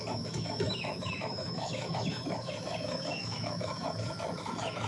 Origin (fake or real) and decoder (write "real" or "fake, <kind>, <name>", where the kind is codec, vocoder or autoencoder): fake, autoencoder, DAC-VAE